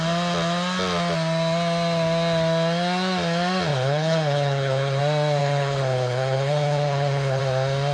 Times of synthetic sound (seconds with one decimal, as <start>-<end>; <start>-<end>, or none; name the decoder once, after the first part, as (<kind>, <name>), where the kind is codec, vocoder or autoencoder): 3.7-5.0 (codec, HILCodec); 5.4-7.4